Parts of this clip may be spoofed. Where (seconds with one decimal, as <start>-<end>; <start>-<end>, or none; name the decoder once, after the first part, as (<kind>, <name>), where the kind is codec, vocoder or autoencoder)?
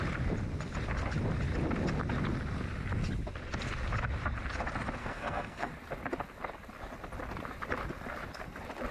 5.0-5.7 (codec, SNAC)